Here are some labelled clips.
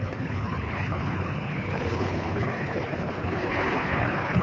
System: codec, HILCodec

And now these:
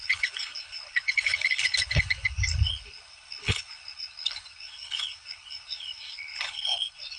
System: codec, HILCodec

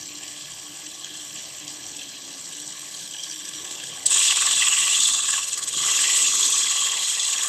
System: codec, HILCodec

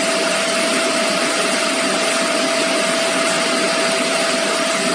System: none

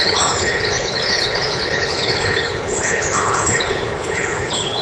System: codec, HILCodec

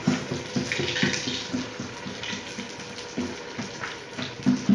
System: none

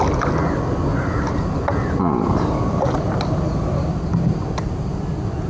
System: none